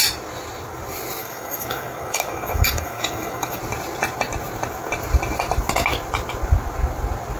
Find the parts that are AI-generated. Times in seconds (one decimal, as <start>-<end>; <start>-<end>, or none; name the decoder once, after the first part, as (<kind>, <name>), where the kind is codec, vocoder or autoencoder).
1.2-3.6 (codec, DAC)